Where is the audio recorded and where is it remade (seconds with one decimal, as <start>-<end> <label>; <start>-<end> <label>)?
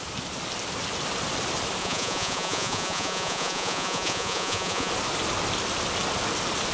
0.0-1.8 recorded; 1.8-4.9 remade; 4.9-6.7 recorded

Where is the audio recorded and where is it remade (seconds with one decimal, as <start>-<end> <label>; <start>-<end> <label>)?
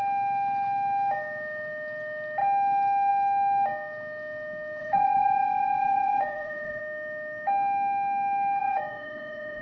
0.0-4.8 recorded; 4.8-6.8 remade; 6.8-8.6 recorded; 8.6-9.6 remade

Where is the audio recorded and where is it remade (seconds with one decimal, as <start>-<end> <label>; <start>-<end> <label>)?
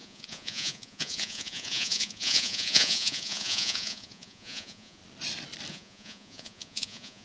0.0-5.0 remade; 5.0-5.7 recorded; 5.7-7.2 remade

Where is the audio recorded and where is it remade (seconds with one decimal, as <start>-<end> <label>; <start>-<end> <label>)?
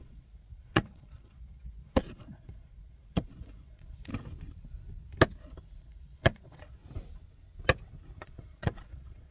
0.0-4.1 remade; 4.1-5.8 recorded; 5.8-6.8 remade; 6.8-8.2 recorded; 8.2-9.3 remade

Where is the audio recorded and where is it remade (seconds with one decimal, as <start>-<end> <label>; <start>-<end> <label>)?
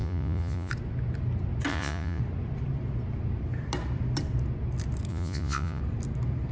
0.0-0.7 remade; 0.7-1.7 recorded; 1.7-2.2 remade; 2.2-5.1 recorded; 5.1-5.8 remade; 5.8-6.5 recorded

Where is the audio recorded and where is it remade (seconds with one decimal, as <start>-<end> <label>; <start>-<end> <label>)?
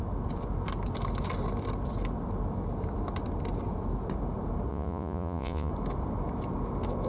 0.0-4.7 recorded; 4.7-5.7 remade; 5.7-7.1 recorded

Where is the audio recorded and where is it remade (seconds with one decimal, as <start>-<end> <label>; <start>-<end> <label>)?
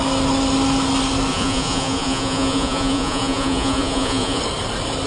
0.0-1.3 recorded; 1.3-4.4 remade; 4.4-5.1 recorded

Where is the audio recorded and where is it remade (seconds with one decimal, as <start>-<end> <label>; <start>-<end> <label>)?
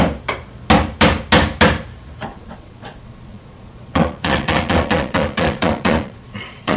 0.0-2.3 recorded; 2.3-6.8 remade